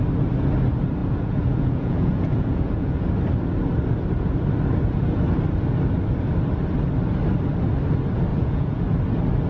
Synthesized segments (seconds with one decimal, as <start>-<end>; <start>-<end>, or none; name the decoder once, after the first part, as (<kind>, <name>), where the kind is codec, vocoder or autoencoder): 1.0-3.0 (vocoder, Vocos); 8.3-8.8